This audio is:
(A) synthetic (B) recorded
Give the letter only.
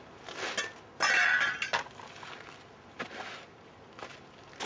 B